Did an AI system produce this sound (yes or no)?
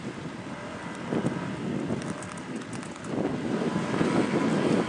no